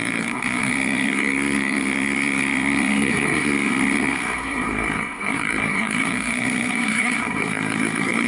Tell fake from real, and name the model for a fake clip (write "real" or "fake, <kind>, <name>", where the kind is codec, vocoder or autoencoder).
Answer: fake, codec, SNAC